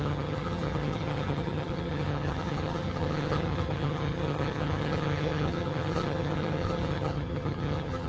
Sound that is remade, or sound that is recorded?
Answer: remade